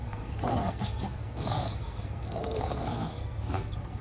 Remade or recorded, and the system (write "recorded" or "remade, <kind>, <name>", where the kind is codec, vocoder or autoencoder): remade, codec, SNAC